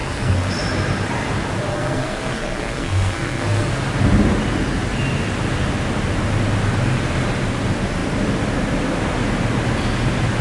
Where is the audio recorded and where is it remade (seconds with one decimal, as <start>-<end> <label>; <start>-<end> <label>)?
0.0-0.5 remade; 0.5-1.7 recorded; 1.7-3.7 remade; 3.7-10.4 recorded